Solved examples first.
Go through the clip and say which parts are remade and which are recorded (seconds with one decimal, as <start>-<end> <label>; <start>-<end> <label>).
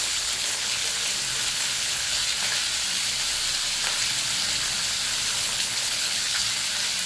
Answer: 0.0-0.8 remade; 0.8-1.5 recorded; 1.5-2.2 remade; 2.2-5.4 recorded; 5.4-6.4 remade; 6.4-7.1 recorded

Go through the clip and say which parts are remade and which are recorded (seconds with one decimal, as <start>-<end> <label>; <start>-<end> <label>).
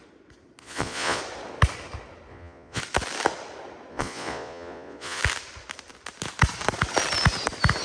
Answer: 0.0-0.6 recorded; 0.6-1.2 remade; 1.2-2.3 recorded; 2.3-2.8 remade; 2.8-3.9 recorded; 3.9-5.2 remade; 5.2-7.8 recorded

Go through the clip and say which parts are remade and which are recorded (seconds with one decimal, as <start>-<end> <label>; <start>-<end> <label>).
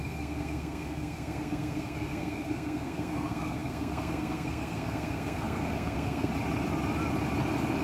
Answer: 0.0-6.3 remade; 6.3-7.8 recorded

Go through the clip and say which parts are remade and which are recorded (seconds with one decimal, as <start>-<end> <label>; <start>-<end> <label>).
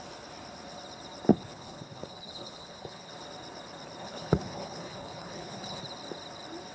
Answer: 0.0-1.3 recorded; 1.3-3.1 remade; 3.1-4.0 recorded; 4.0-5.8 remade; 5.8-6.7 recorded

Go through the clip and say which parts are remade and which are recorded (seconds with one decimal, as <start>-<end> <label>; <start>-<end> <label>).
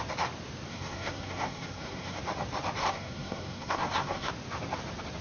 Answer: 0.0-0.7 recorded; 0.7-2.2 remade; 2.2-2.8 recorded; 2.8-4.3 remade; 4.3-5.2 recorded